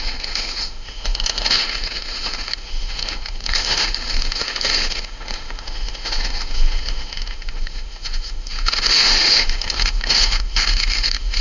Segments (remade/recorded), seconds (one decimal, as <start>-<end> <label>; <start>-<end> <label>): 0.0-11.4 remade